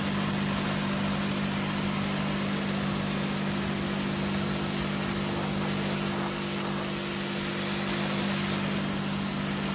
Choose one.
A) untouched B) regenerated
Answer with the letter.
A